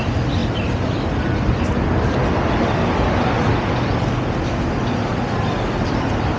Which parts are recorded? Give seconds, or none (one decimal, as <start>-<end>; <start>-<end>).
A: 0.0-6.4